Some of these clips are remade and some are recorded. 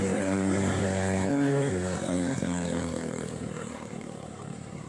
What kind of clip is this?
remade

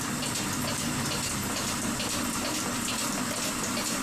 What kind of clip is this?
recorded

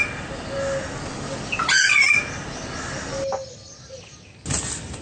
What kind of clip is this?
recorded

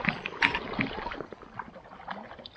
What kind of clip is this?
recorded